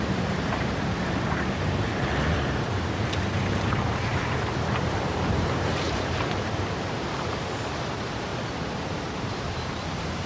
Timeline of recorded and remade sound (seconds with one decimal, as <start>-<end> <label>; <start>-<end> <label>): 0.0-8.3 remade; 8.3-9.0 recorded; 9.0-10.3 remade